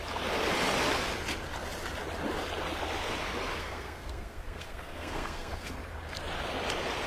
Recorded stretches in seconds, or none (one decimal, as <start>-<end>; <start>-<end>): 0.0-3.5; 5.7-7.1